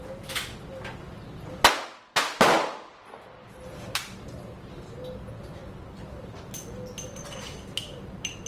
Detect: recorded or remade recorded